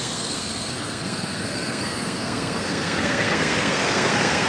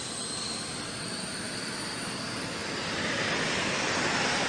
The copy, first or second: first